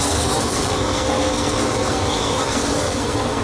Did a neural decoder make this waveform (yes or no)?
yes